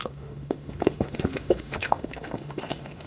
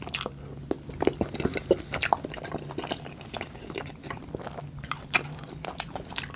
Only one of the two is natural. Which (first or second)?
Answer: second